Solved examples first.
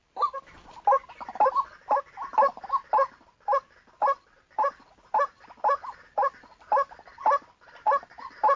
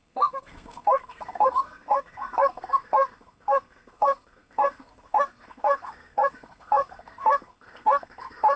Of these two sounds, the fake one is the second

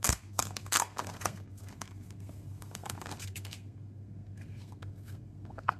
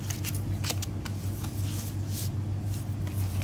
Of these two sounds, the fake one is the first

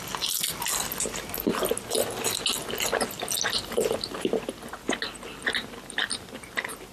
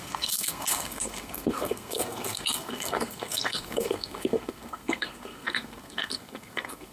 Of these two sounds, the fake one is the second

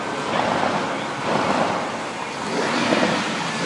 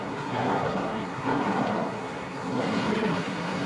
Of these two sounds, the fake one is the second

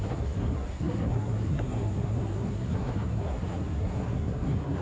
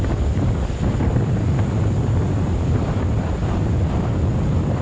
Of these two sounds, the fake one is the first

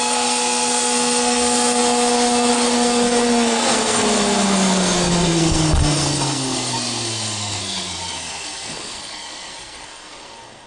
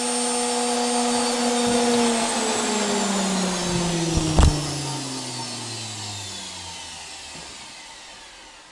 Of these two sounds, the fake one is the first